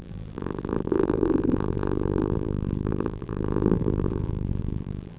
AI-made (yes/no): yes